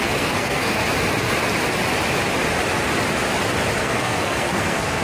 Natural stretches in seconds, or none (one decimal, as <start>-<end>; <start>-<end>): 0.8-3.8